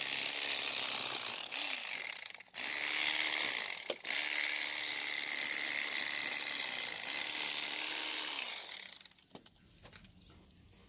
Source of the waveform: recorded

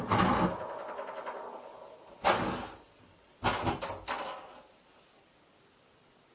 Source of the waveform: recorded